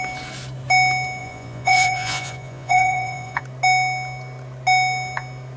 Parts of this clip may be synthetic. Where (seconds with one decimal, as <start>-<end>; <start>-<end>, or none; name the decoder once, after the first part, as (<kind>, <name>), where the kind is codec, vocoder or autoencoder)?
1.2-3.4 (vocoder, Vocos)